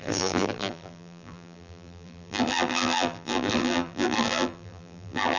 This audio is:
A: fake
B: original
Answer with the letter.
A